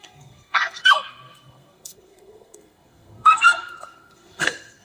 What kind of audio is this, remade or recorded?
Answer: remade